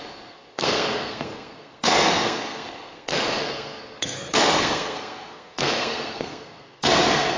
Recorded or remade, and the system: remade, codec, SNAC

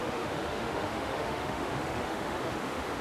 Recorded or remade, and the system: remade, autoencoder, DAC-VAE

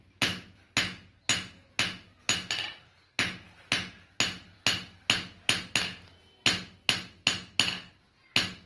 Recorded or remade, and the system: recorded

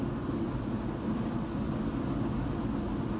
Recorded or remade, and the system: recorded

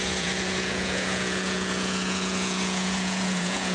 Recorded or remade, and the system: remade, vocoder, Vocos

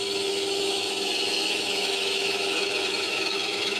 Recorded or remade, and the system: remade, autoencoder, DAC-VAE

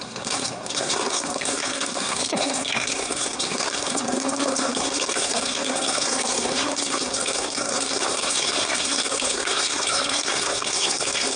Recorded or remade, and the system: remade, codec, SNAC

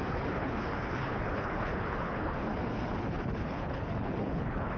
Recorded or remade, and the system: remade, codec, HILCodec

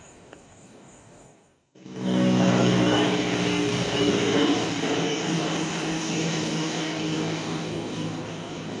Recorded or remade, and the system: remade, codec, DAC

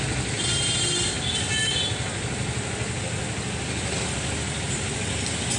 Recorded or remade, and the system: recorded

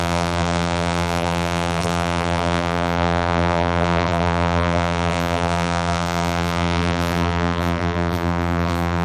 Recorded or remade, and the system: remade, vocoder, BigVGAN v2